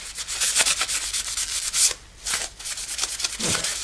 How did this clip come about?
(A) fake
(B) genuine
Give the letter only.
B